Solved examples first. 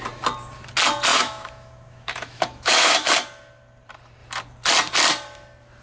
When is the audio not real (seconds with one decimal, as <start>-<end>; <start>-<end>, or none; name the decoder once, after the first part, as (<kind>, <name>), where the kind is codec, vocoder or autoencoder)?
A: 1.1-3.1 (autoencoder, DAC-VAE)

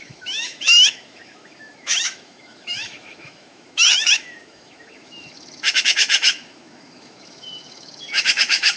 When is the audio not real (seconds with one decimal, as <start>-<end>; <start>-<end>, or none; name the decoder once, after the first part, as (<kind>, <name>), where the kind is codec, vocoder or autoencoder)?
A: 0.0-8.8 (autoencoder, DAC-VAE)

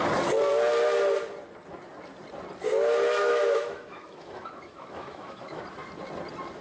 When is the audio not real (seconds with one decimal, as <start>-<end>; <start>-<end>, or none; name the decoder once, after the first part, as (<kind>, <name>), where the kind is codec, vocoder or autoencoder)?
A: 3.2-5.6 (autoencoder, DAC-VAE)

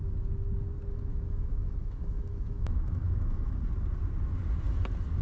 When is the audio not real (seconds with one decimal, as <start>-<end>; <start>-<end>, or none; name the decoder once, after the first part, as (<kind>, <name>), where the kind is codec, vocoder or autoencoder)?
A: 1.1-3.6 (autoencoder, DAC-VAE)